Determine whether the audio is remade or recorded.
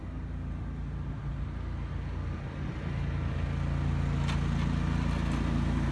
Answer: recorded